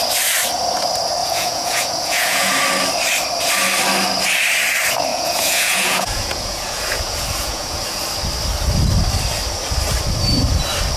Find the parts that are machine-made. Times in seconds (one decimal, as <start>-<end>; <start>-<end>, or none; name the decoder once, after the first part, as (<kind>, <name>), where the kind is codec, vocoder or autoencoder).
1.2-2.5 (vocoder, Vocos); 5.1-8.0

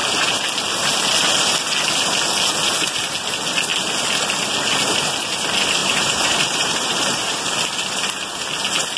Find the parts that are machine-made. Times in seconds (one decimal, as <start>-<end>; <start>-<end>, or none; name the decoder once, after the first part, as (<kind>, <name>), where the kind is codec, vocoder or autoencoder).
5.8-7.4 (vocoder, BigVGAN v2)

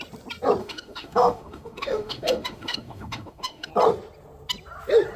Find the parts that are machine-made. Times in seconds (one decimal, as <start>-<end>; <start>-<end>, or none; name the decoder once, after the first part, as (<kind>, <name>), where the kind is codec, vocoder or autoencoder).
0.6-3.7 (autoencoder, DAC-VAE)

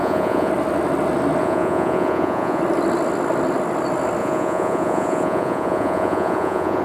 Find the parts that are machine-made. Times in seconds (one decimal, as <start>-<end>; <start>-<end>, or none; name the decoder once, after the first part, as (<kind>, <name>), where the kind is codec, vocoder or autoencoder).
0.0-0.5 (vocoder, Vocos); 1.4-2.6; 4.2-6.8

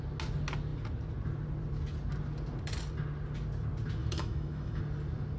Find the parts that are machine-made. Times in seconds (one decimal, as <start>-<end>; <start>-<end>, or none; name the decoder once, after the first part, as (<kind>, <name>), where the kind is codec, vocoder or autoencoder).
4.0-4.8 (autoencoder, DAC-VAE)